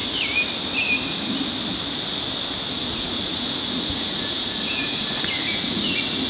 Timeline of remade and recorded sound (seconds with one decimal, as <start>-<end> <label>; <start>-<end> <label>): 0.0-2.9 recorded; 2.9-6.3 remade